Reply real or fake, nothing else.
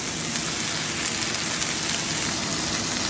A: real